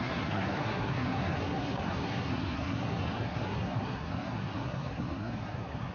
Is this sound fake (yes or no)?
yes